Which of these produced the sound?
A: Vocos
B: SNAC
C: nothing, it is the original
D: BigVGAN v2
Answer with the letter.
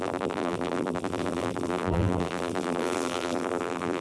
D